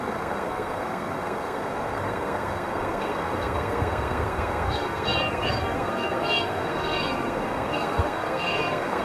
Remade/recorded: remade